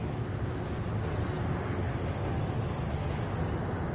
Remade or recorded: recorded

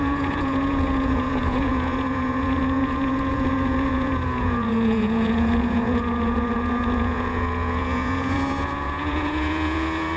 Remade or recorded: remade